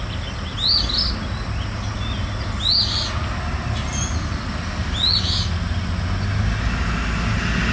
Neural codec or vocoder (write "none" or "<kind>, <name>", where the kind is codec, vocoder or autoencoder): none